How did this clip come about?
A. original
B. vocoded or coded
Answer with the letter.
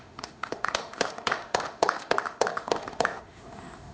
B